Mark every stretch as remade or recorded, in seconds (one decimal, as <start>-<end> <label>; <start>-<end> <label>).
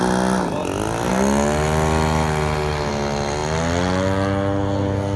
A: 0.0-5.2 recorded